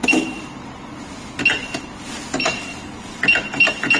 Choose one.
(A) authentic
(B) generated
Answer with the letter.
A